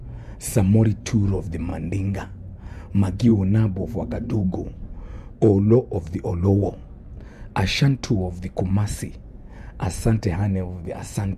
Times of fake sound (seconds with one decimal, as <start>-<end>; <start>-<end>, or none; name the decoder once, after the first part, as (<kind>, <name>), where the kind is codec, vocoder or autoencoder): 0.0-1.7 (vocoder, Vocos); 2.6-3.3; 4.3-6.8; 9.3-11.4